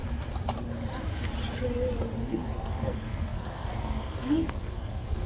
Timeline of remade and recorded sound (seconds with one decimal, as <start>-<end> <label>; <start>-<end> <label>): 0.0-2.2 recorded; 2.2-5.3 remade

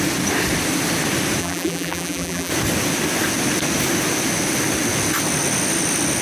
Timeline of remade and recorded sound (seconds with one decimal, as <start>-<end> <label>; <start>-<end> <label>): 0.0-1.4 recorded; 1.4-2.5 remade; 2.5-6.2 recorded

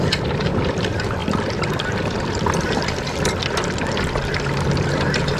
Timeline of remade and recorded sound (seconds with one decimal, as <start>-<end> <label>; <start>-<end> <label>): 0.0-5.4 remade